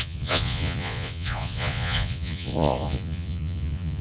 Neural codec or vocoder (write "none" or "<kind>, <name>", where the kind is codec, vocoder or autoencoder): vocoder, Vocos